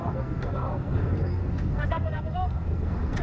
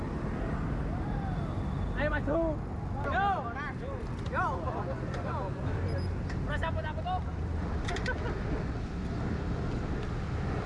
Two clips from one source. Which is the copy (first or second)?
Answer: first